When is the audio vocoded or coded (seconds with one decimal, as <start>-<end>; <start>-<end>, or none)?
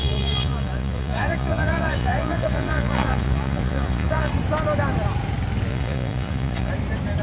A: 0.0-4.3; 5.7-6.7